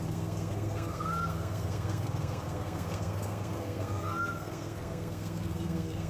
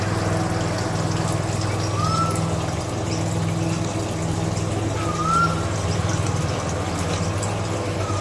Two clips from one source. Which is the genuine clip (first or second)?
second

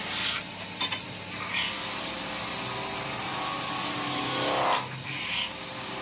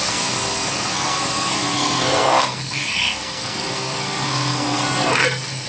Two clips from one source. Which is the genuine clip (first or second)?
first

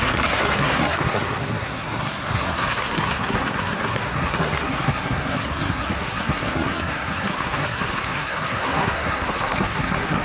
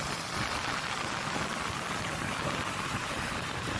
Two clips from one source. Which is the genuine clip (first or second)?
second